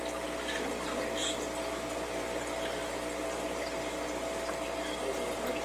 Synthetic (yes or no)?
no